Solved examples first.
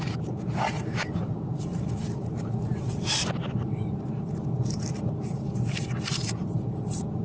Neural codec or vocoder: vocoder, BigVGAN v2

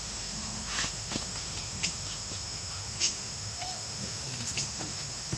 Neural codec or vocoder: autoencoder, DAC-VAE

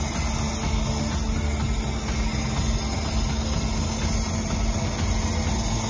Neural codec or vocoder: none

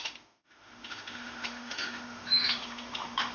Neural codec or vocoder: autoencoder, DAC-VAE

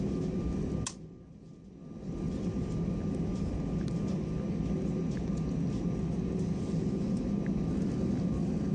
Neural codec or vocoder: none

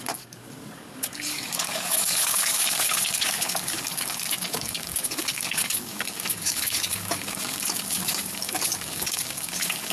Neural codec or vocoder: codec, DAC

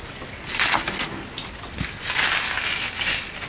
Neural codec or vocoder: none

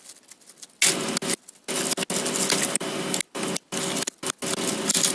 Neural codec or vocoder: none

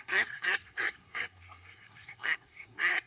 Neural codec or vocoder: codec, SNAC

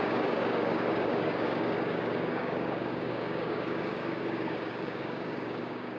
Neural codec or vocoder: codec, DAC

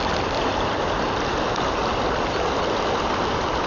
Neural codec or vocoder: none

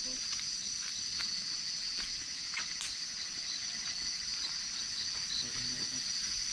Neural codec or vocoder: none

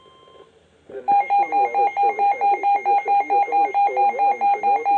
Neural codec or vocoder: none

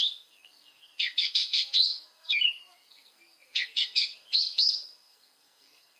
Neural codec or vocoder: codec, SNAC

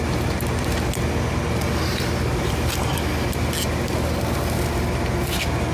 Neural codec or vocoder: none